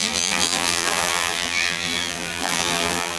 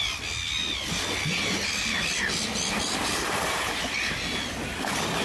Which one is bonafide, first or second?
second